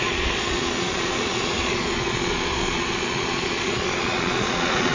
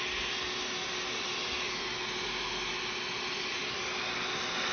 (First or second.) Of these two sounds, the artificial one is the first